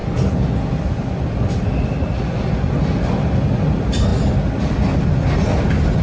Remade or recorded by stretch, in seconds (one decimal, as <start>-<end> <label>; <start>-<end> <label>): 0.0-6.0 recorded